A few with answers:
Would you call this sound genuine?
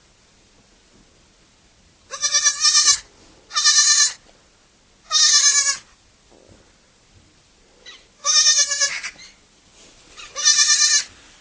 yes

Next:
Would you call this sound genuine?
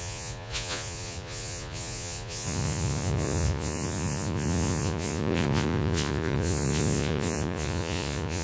no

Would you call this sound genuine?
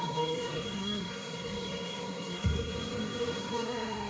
no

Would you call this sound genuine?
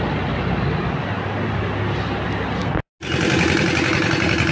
yes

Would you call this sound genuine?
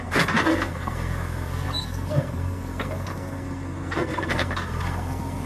no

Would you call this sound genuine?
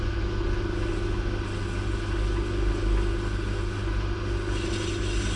yes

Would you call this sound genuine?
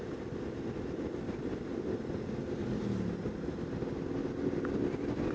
yes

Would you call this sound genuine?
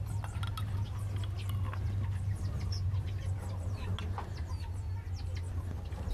yes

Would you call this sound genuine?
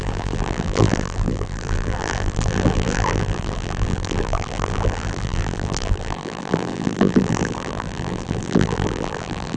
no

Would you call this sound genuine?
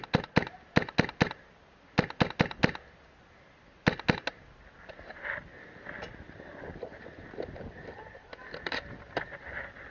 yes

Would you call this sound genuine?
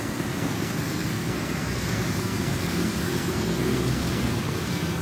no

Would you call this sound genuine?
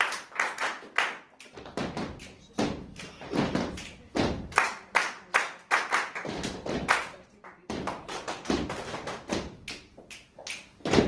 yes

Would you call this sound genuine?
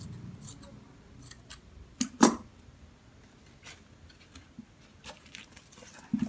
yes